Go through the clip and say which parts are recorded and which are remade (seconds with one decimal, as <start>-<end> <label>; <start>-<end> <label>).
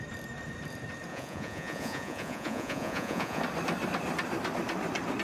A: 0.0-1.1 recorded; 1.1-3.4 remade; 3.4-5.2 recorded